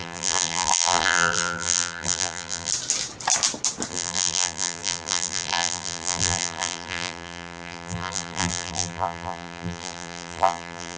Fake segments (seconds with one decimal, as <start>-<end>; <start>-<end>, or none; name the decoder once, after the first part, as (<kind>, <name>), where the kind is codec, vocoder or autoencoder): 0.0-2.7 (vocoder, BigVGAN v2); 3.9-11.0